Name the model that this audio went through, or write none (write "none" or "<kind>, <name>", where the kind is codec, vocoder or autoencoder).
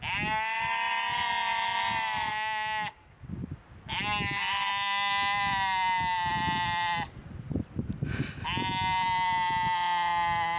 none